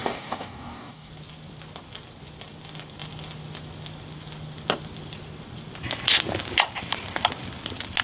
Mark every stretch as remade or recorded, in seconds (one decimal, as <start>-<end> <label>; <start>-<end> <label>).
0.0-1.1 remade; 1.1-8.0 recorded